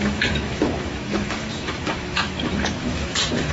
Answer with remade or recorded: remade